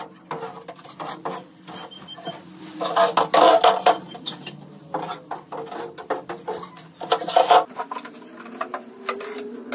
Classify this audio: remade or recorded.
recorded